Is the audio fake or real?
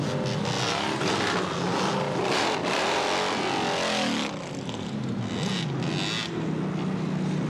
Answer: real